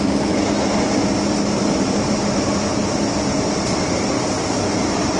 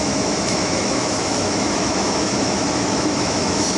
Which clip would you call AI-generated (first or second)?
second